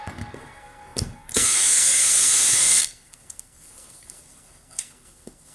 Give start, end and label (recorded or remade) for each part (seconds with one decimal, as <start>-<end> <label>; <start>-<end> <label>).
0.0-5.5 remade